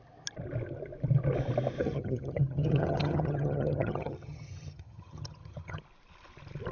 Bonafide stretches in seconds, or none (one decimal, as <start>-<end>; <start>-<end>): 0.0-1.8; 5.8-6.7